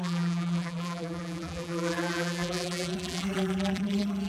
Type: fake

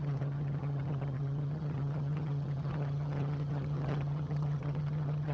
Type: fake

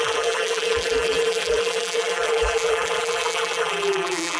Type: fake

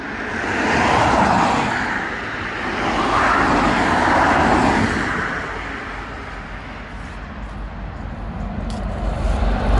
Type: real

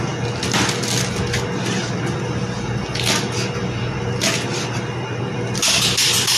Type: real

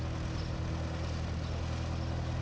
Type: real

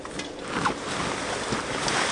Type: real